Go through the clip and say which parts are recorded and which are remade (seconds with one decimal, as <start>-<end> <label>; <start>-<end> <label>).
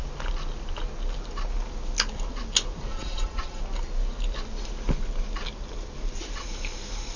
0.0-2.9 recorded; 2.9-3.6 remade; 3.6-7.2 recorded